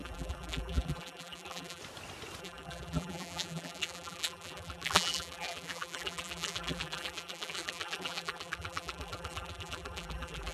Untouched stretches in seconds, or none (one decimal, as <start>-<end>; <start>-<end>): 1.8-2.4